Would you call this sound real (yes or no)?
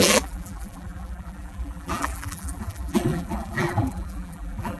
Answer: no